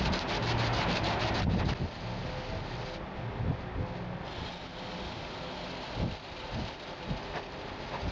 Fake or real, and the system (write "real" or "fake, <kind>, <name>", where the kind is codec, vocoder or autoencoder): real